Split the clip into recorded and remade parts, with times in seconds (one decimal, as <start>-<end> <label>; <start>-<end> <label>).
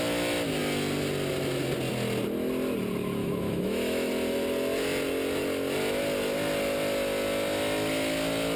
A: 0.0-3.2 recorded; 3.2-4.1 remade; 4.1-8.6 recorded